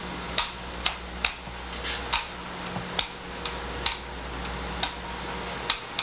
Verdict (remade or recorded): recorded